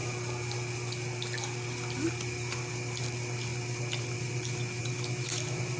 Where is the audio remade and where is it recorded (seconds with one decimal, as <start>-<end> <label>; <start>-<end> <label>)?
0.0-5.8 recorded

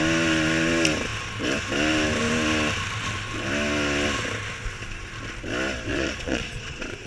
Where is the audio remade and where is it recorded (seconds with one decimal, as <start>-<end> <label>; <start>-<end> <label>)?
0.0-5.9 recorded; 5.9-7.1 remade